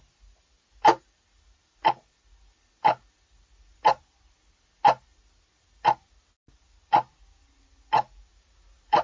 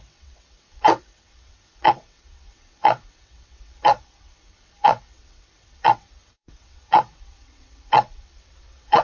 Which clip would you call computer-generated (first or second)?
second